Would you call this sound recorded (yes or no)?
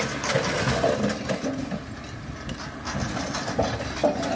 yes